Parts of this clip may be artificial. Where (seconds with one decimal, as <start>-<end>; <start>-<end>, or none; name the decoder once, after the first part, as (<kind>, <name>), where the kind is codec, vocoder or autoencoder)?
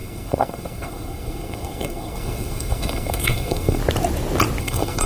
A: 0.0-3.8 (codec, SNAC); 4.6-5.1